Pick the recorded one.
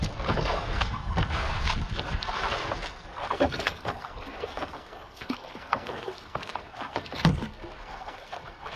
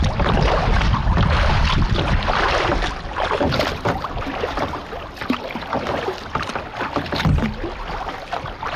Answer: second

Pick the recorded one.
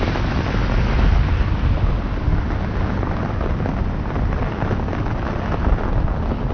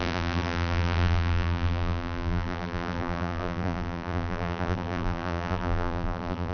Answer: first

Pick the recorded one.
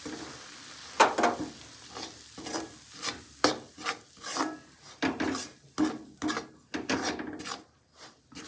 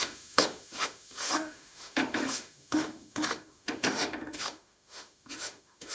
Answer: first